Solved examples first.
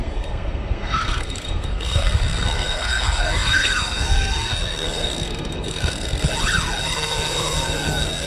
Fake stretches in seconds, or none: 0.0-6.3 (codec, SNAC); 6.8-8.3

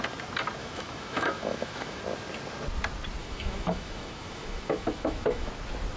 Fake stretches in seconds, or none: 0.6-2.0 (autoencoder, DAC-VAE); 3.2-5.5

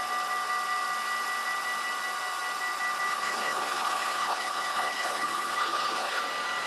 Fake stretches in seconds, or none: 3.1-6.2 (codec, HILCodec)

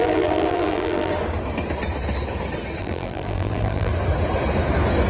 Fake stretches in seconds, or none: 0.0-1.1 (vocoder, BigVGAN v2); 2.8-3.9

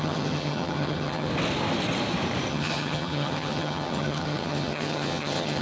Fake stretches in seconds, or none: 0.0-1.3 (vocoder, HiFi-GAN); 2.5-5.6

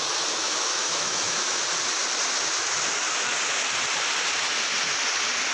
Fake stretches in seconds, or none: 0.4-1.6 (autoencoder, DAC-VAE)

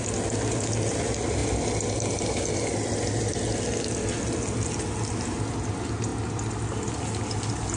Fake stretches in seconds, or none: none

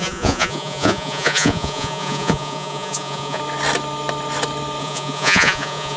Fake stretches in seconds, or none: 0.0-3.4 (vocoder, Vocos); 4.8-6.0